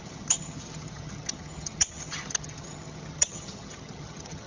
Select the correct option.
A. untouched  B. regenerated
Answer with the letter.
B